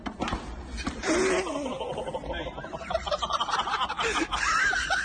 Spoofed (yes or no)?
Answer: yes